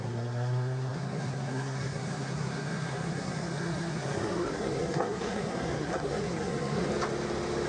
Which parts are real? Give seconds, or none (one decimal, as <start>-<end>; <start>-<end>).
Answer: 6.9-7.7